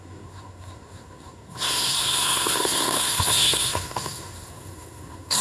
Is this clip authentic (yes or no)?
no